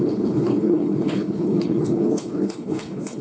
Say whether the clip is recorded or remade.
remade